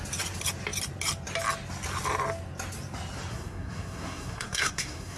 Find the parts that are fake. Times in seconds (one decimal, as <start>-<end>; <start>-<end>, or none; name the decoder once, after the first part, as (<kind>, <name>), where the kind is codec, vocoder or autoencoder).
3.3-5.2 (codec, SNAC)